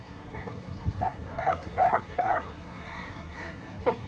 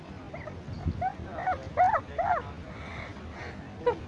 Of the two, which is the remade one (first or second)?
first